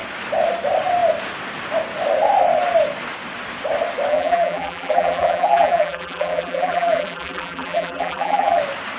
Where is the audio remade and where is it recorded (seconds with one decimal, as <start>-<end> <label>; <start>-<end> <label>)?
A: 0.0-4.1 recorded; 4.1-8.6 remade; 8.6-9.0 recorded